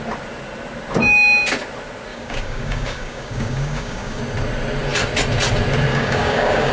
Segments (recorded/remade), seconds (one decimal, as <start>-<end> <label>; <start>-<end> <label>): 0.0-2.1 recorded; 2.1-4.2 remade; 4.2-5.9 recorded; 5.9-6.7 remade